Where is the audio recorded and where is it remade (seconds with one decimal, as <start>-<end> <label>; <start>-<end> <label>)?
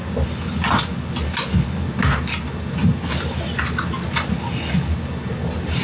0.0-5.8 recorded